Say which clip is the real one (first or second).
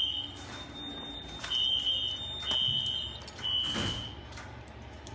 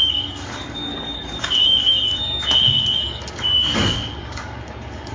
first